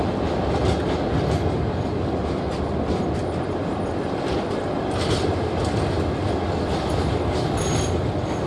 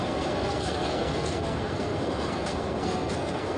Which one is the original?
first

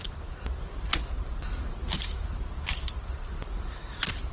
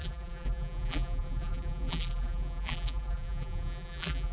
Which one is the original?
first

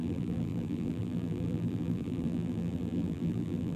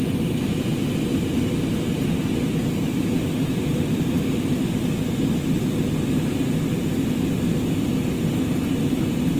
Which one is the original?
second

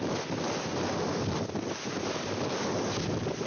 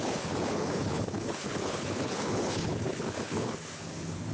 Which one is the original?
first